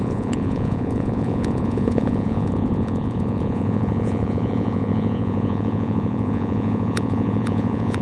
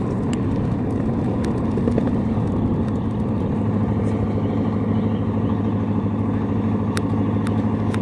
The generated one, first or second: first